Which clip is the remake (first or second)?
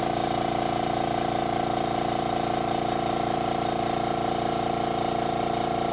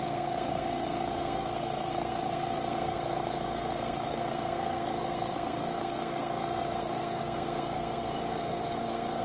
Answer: second